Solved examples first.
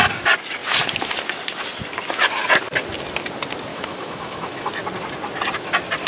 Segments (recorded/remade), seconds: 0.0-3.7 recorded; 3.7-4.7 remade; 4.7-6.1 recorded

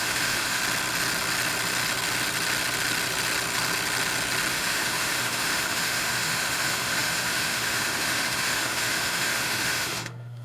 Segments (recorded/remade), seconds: 0.0-0.6 remade; 0.6-4.5 recorded; 4.5-10.4 remade